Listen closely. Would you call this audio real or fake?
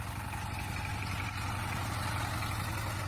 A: real